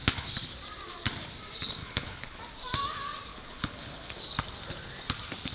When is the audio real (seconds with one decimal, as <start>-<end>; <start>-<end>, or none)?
0.0-1.8; 2.4-3.3; 4.2-5.5